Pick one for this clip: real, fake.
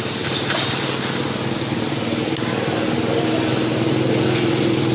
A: real